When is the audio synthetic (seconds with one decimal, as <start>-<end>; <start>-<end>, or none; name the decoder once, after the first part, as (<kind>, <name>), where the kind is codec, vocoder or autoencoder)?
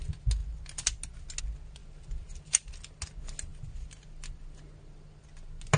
1.8-2.7 (vocoder, BigVGAN v2)